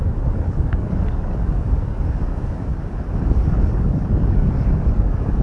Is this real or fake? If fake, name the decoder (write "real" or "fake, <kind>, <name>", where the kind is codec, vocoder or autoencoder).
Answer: fake, codec, DAC